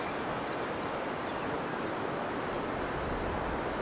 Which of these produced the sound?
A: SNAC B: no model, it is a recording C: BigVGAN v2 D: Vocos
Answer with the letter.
B